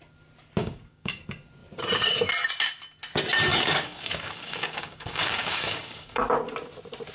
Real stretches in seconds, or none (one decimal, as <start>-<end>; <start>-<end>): 0.0-0.6; 1.2-3.5; 6.3-7.1